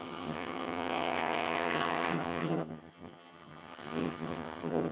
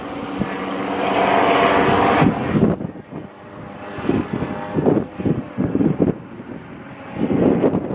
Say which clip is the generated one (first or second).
first